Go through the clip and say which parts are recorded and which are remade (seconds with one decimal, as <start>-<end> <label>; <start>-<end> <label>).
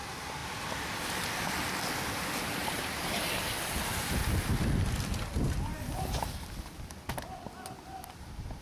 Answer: 0.0-2.6 recorded; 2.6-3.4 remade; 3.4-8.6 recorded